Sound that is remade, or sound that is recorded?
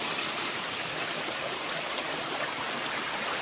recorded